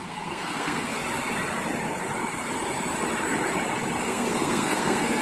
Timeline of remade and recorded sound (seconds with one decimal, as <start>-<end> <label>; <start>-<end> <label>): 0.0-0.9 remade; 0.9-4.0 recorded; 4.0-5.2 remade